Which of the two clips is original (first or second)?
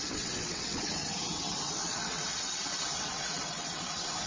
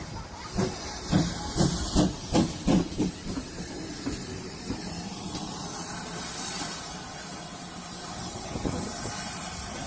second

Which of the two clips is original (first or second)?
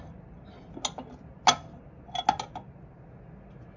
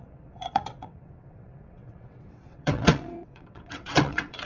first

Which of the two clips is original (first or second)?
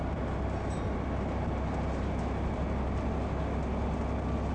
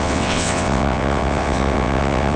first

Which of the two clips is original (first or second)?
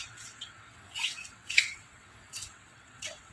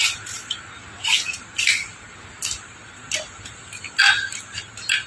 second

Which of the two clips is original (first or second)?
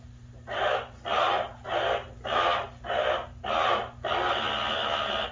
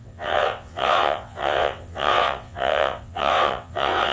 first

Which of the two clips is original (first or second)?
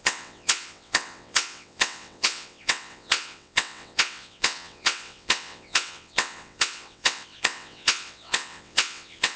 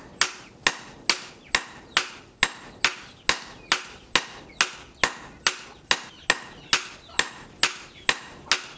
second